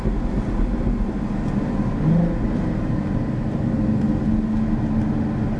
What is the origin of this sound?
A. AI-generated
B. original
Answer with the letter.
B